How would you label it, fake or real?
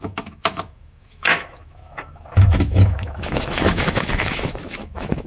fake